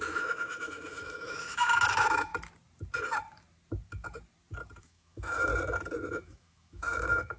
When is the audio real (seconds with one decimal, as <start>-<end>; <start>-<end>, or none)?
2.3-4.8; 5.5-6.1